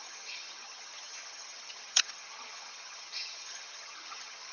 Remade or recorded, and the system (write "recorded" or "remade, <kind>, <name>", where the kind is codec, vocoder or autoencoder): remade, vocoder, HiFi-GAN